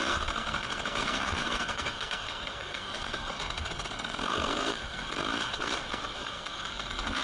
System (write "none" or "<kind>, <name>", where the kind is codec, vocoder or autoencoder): codec, SNAC